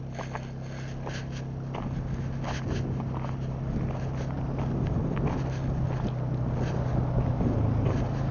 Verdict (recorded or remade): recorded